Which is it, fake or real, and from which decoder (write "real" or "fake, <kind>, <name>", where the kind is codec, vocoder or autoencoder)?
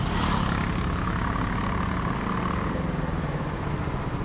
real